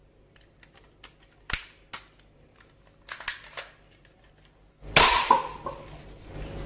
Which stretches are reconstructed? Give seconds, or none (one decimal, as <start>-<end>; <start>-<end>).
none